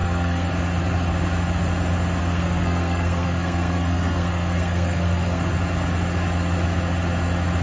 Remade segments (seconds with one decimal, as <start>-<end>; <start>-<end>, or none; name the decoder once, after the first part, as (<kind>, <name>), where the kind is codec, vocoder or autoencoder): 0.0-0.5 (codec, SNAC); 2.2-5.5